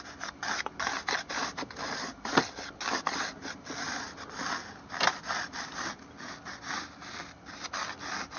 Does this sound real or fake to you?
real